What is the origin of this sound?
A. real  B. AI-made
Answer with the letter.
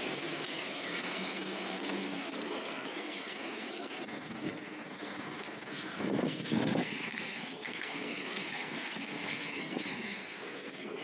B